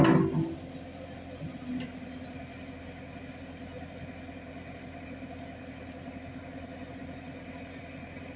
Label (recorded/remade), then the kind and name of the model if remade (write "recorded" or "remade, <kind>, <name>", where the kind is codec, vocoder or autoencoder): recorded